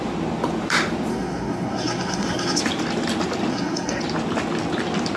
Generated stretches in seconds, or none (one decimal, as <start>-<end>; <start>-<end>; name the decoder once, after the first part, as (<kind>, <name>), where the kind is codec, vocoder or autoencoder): 1.1-2.6 (codec, SNAC); 3.5-4.0